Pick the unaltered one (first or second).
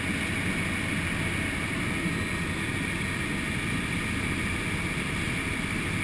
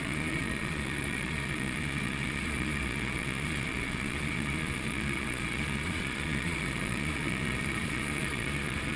first